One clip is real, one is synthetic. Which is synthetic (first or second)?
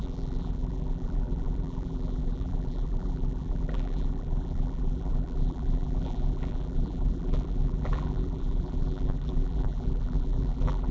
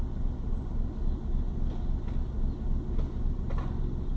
first